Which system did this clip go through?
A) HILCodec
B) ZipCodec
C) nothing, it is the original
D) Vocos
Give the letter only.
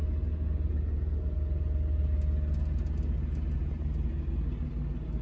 C